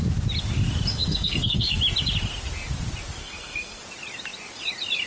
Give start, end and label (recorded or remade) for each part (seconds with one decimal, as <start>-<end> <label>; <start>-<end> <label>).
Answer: 0.0-0.9 recorded; 0.9-1.8 remade; 1.8-3.2 recorded; 3.2-3.8 remade; 3.8-5.1 recorded